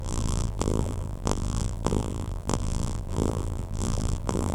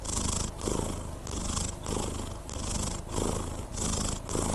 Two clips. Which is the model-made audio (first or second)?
first